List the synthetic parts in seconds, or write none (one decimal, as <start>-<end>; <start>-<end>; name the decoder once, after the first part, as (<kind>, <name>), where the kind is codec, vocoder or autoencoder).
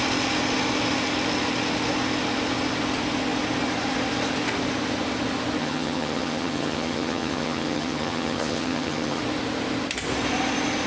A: 5.6-9.2 (vocoder, HiFi-GAN)